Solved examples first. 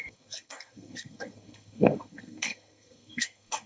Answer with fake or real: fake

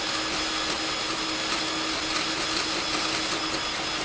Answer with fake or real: real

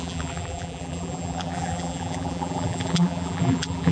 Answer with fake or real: fake